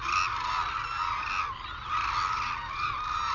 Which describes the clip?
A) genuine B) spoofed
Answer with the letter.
A